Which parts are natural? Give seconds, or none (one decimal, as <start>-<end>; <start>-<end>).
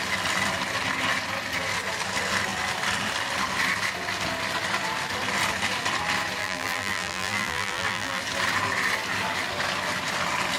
0.0-6.4; 8.2-10.6